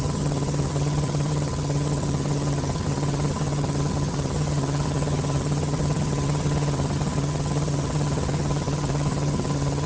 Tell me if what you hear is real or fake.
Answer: fake